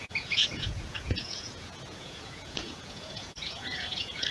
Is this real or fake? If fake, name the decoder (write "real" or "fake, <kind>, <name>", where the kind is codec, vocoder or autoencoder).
fake, vocoder, Vocos